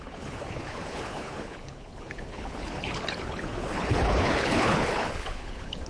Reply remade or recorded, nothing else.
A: remade